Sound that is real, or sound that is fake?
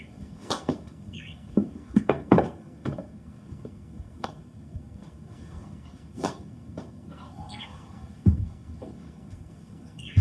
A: fake